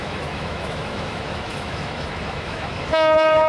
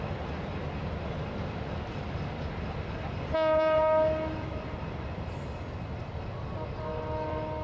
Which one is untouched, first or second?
second